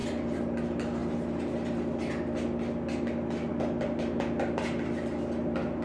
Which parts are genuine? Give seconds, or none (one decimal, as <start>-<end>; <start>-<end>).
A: 0.0-5.8